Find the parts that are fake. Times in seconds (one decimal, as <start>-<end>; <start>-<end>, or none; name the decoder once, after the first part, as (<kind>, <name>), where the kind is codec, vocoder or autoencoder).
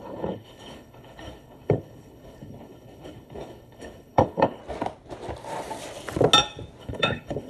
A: 0.0-4.6 (codec, HILCodec); 6.8-7.5